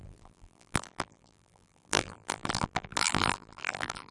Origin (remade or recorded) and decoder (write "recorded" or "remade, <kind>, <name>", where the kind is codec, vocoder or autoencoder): remade, vocoder, BigVGAN v2